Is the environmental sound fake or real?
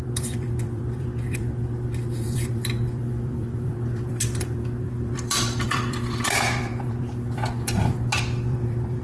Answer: fake